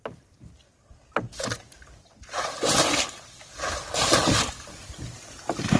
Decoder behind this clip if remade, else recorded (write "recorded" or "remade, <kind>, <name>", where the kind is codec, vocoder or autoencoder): recorded